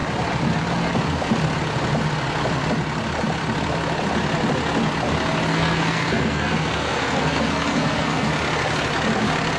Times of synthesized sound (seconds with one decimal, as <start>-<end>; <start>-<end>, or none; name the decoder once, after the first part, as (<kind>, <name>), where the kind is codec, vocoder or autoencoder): 5.5-8.3 (codec, SNAC)